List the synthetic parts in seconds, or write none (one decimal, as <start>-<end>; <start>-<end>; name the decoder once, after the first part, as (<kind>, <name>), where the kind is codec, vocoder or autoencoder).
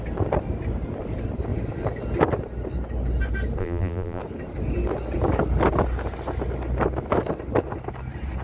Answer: 3.6-4.2 (vocoder, BigVGAN v2)